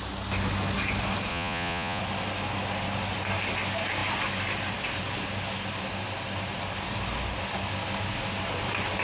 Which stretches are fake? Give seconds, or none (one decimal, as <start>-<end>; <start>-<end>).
1.3-2.0